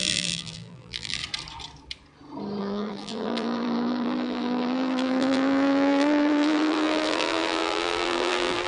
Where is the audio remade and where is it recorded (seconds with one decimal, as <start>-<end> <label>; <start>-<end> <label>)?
0.0-1.2 remade; 1.2-2.6 recorded; 2.6-8.7 remade